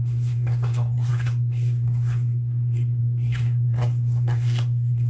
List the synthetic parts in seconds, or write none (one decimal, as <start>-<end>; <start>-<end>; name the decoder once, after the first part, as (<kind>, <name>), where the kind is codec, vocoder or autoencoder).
0.0-5.1 (codec, SNAC)